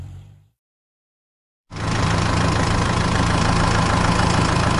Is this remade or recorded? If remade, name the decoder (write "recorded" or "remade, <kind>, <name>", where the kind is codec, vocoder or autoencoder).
remade, vocoder, BigVGAN v2